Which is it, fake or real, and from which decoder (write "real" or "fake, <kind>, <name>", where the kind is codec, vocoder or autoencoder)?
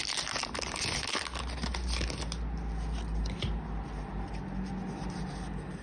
real